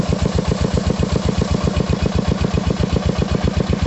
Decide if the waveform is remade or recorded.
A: recorded